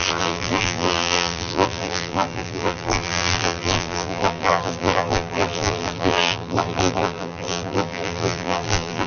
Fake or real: fake